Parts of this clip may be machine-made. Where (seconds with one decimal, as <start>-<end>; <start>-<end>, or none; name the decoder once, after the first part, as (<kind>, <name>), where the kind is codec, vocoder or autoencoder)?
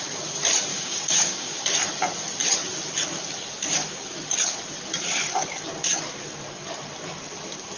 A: 0.7-1.6 (codec, DAC)